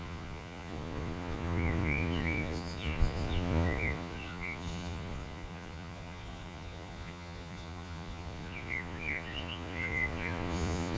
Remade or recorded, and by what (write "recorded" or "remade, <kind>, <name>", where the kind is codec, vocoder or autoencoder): remade, vocoder, Vocos